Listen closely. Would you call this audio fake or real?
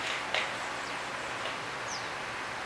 real